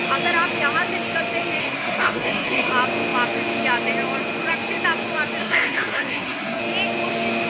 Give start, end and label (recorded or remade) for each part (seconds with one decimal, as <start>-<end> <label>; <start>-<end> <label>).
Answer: 0.0-1.6 recorded; 1.6-2.7 remade; 2.7-5.4 recorded; 5.4-6.6 remade; 6.6-7.5 recorded